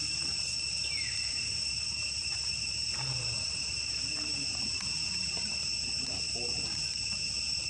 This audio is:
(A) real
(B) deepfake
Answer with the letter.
B